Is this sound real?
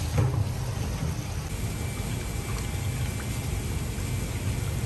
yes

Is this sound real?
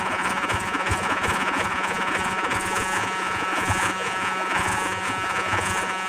no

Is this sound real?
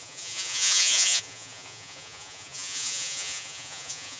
no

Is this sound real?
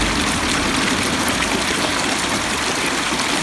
yes